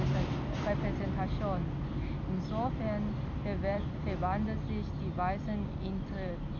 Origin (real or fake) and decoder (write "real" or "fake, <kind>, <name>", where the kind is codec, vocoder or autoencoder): real